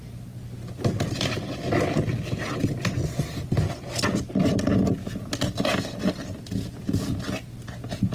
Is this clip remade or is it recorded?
recorded